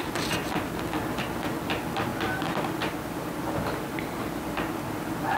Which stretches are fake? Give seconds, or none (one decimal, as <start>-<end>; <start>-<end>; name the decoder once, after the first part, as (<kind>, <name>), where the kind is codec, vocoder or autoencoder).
none